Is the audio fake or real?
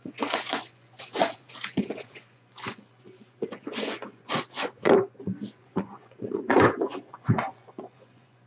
fake